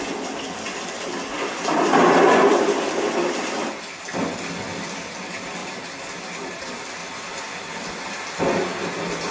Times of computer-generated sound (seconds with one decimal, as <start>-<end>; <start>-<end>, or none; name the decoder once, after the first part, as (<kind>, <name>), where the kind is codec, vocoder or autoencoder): 1.3-3.6 (vocoder, BigVGAN v2)